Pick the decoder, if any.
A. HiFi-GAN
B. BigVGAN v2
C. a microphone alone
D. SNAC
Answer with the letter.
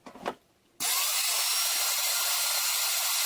C